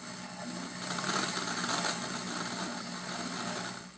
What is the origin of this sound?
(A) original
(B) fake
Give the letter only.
A